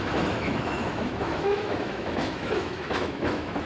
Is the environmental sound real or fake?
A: fake